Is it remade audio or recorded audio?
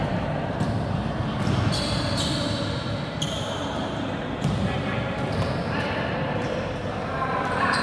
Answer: remade